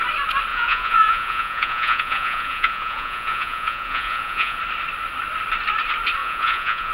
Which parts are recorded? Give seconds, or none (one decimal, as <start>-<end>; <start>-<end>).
0.0-0.5; 4.6-6.2